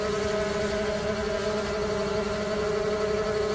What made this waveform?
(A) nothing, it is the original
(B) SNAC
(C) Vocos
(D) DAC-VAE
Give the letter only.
A